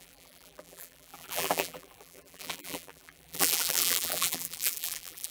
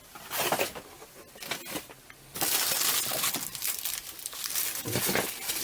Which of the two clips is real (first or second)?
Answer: second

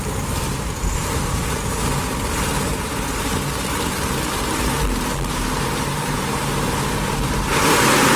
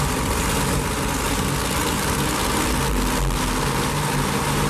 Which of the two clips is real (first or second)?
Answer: second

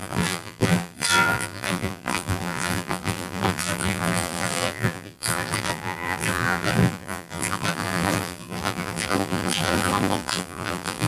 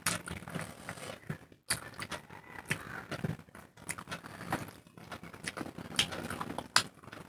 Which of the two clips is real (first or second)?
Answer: second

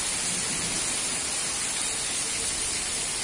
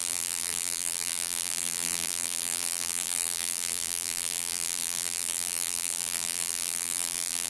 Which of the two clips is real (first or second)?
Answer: first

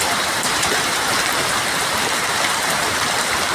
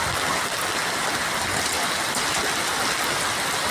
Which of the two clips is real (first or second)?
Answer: second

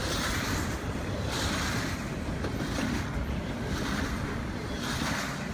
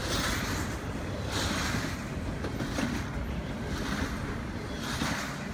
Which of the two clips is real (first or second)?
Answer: second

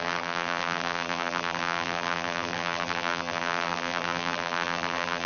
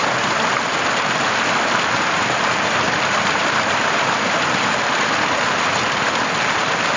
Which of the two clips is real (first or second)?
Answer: second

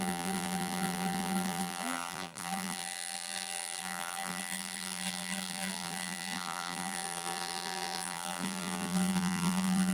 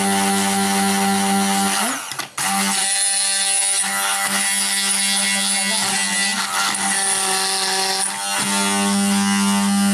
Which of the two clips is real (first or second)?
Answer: second